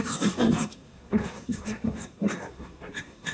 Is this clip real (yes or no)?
no